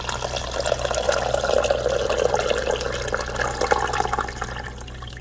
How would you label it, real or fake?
real